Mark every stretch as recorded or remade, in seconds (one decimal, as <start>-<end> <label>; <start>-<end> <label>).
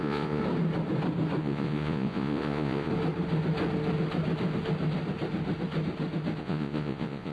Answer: 0.0-0.4 remade; 0.4-1.4 recorded; 1.4-2.9 remade; 2.9-6.4 recorded; 6.4-7.3 remade